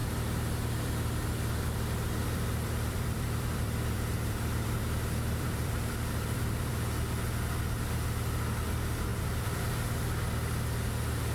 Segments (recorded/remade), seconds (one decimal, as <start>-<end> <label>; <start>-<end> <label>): 0.0-2.2 recorded; 2.2-6.7 remade; 6.7-9.1 recorded; 9.1-9.7 remade; 9.7-11.3 recorded